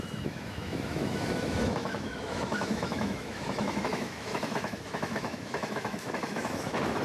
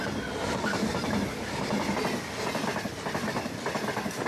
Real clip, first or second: second